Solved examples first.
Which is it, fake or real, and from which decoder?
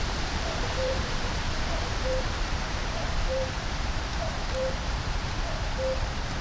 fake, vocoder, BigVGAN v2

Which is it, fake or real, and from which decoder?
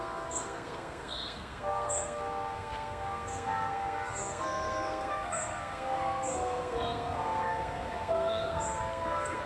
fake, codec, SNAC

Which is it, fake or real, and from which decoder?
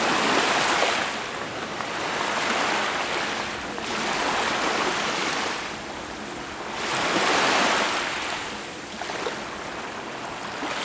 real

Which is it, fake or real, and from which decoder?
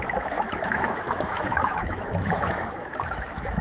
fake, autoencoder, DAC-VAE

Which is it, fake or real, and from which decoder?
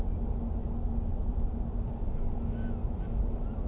real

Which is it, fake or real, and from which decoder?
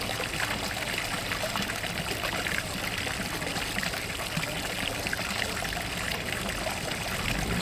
real